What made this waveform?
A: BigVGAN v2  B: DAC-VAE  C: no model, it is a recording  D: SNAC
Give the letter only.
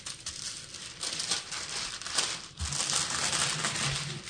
C